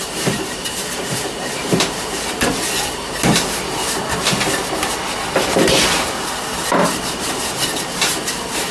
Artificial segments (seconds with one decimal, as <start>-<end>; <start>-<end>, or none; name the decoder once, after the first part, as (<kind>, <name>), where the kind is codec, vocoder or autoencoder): 0.0-2.5 (vocoder, BigVGAN v2)